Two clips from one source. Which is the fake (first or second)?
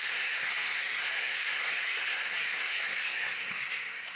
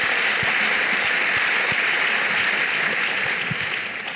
first